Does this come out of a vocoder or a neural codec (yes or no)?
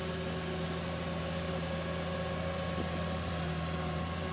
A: no